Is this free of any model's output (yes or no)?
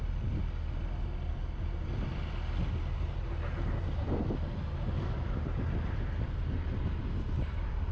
yes